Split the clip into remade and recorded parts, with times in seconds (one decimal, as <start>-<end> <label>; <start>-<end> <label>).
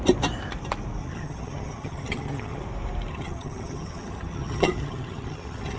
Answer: 0.0-1.0 recorded; 1.0-2.6 remade; 2.6-3.1 recorded; 3.1-5.8 remade